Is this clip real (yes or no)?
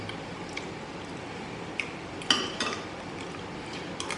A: yes